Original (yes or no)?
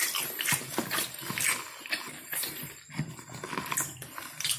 yes